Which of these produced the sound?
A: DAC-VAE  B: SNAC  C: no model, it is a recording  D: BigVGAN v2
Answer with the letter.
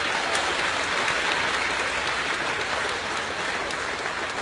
C